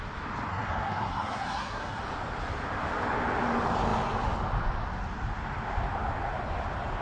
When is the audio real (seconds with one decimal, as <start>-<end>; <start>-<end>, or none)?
0.0-0.5; 2.0-7.0